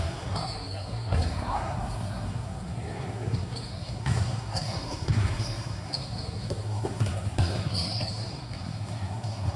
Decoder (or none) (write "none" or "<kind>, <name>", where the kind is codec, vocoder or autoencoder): codec, SNAC